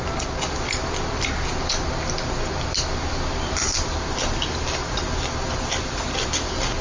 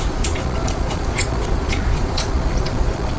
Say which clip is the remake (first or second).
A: second